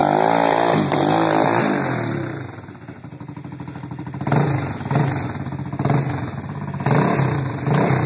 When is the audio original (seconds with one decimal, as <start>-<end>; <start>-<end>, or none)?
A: 0.0-8.1

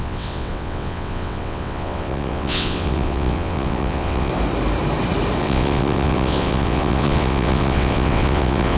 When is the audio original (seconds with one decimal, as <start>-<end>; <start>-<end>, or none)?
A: 4.3-5.4

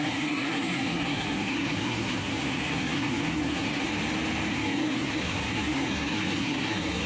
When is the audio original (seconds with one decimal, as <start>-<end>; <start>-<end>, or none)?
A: 3.9-4.5